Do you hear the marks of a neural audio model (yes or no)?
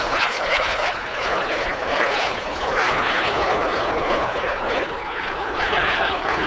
yes